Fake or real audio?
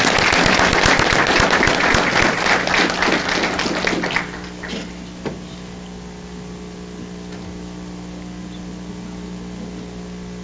real